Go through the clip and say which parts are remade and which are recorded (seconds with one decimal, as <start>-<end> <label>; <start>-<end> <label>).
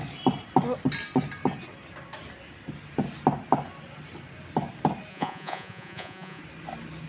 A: 0.0-5.1 recorded; 5.1-6.4 remade; 6.4-7.1 recorded